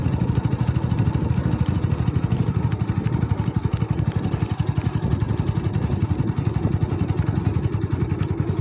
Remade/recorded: recorded